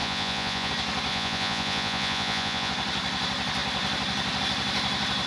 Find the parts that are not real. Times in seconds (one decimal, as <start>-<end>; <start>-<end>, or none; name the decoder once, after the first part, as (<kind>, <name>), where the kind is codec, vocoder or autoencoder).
0.0-0.7 (vocoder, Vocos); 1.1-2.7